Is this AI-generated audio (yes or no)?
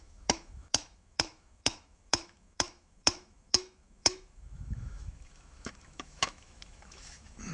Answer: yes